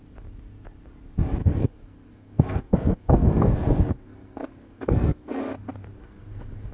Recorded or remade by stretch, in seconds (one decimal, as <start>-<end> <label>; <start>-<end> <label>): 0.0-1.4 recorded; 1.4-5.4 remade; 5.4-6.0 recorded; 6.0-6.7 remade